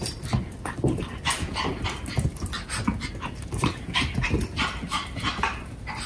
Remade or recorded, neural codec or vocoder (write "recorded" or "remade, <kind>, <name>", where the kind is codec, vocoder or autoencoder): recorded